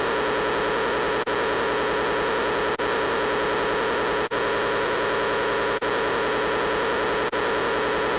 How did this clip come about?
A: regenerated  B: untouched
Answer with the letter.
B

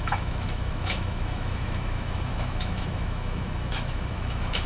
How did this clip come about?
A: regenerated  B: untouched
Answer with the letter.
A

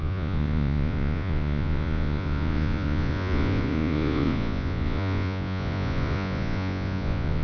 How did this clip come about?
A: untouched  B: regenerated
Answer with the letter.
B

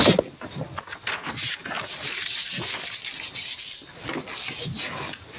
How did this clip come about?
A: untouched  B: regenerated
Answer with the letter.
A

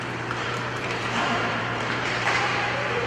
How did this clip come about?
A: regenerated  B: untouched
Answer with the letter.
A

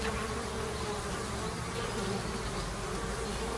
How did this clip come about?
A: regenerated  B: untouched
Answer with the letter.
B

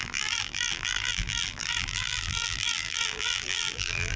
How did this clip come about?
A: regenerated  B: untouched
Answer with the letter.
A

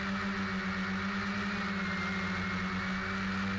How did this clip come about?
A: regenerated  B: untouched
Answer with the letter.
B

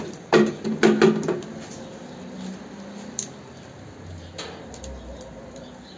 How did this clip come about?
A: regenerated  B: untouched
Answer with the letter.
B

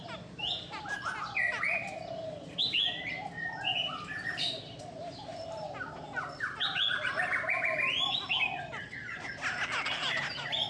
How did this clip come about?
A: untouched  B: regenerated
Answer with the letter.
A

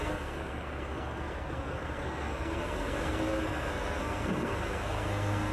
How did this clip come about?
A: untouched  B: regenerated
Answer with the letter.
B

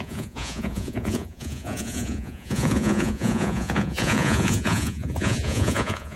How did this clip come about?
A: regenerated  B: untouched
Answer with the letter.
A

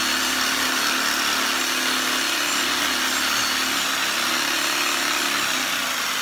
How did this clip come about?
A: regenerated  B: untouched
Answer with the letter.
B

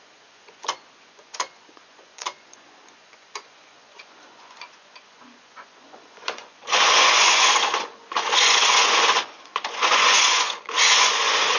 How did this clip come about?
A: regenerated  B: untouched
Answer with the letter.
A